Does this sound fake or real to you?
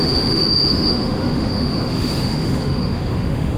fake